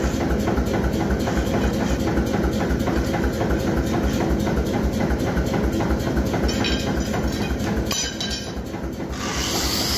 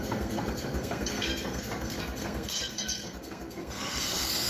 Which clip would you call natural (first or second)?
first